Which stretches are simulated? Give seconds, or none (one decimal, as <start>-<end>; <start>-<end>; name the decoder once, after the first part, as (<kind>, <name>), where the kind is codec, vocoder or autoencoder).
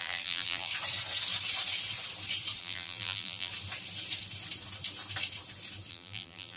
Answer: 0.0-0.7 (vocoder, BigVGAN v2); 2.6-3.5; 5.9-6.6